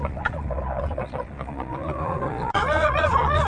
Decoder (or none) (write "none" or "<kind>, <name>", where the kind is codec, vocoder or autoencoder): vocoder, Vocos